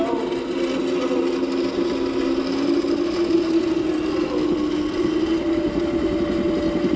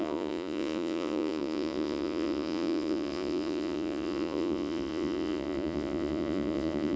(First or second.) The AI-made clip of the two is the second